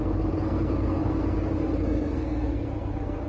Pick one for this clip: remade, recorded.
remade